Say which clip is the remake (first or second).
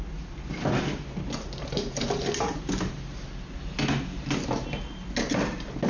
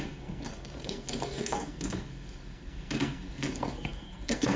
second